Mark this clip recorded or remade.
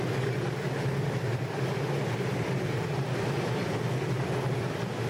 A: recorded